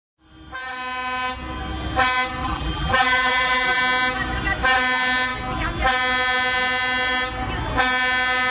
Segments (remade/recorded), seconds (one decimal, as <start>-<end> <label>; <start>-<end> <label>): 0.0-2.4 recorded; 2.4-3.8 remade; 3.8-8.5 recorded